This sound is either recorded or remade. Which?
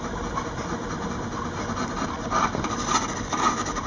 recorded